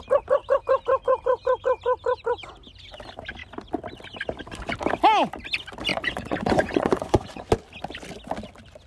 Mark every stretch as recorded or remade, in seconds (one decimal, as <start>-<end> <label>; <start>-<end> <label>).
0.0-5.9 recorded; 5.9-7.5 remade; 7.5-8.9 recorded